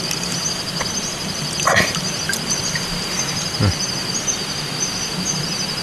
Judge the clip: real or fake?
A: real